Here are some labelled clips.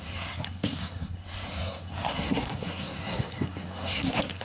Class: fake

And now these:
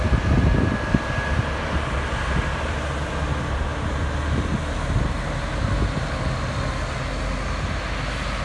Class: real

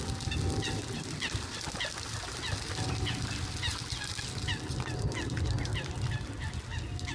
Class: real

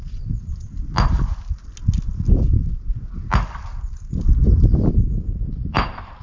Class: real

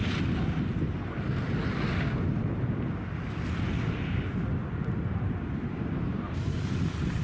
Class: real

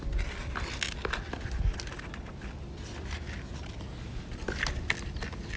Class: real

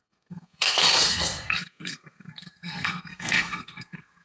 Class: fake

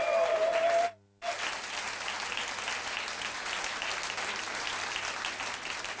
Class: real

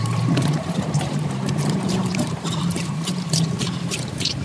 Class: fake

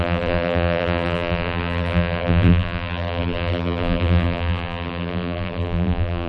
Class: fake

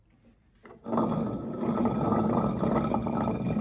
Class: real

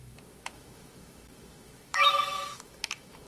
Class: fake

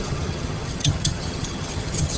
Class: fake